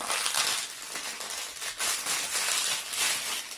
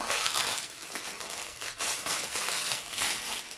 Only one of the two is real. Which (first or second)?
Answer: first